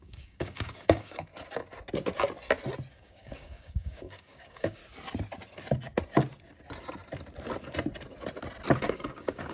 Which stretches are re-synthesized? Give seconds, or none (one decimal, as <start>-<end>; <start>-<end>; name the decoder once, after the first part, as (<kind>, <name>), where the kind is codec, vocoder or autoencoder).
0.0-1.3 (codec, DAC); 2.9-4.8; 8.8-9.5